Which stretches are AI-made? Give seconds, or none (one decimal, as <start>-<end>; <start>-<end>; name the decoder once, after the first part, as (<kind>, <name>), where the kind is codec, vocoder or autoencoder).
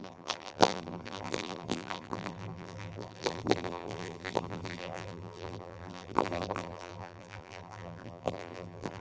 0.0-9.0 (vocoder, BigVGAN v2)